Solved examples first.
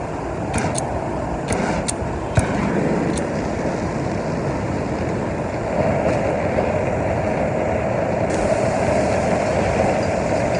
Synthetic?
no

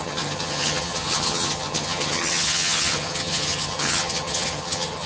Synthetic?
yes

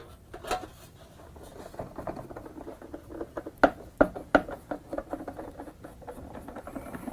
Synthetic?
no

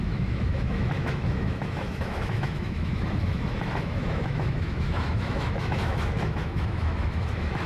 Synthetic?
yes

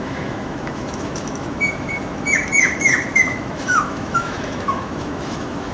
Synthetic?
yes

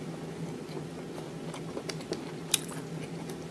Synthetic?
no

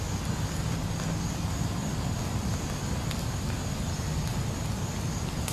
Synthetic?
no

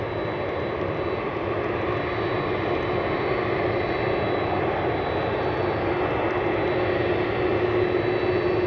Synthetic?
no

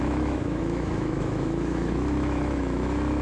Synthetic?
yes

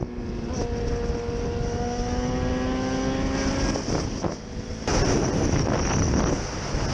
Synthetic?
no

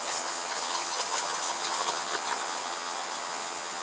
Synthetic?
yes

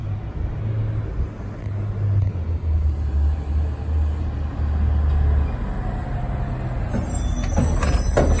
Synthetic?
no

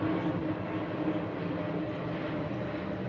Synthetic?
no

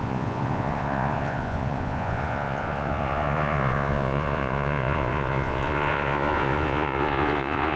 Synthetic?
yes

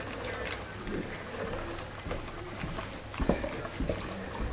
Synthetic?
no